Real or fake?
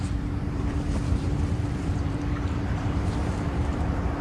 fake